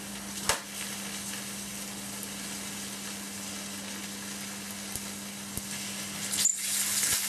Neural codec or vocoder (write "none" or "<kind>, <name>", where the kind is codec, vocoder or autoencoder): none